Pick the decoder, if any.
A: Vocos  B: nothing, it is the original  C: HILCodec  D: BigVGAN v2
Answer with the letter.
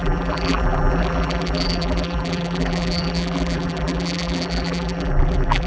D